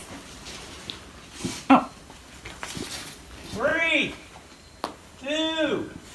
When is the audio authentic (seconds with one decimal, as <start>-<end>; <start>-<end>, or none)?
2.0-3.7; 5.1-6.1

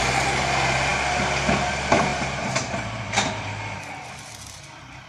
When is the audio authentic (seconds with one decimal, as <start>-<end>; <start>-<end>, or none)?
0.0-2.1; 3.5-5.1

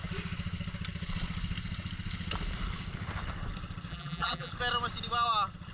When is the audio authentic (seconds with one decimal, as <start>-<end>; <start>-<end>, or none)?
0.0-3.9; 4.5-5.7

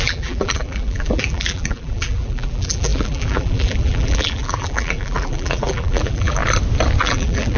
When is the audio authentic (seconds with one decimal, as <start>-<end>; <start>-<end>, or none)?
6.4-7.0

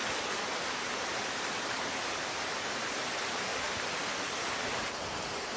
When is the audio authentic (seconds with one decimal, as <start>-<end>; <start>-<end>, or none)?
0.0-0.7; 3.5-4.3

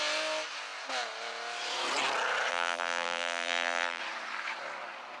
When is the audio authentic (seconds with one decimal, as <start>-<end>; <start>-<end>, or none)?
0.0-2.5; 4.0-5.2